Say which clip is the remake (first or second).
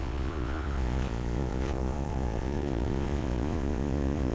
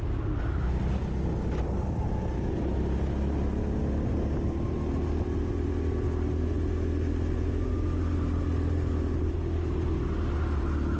first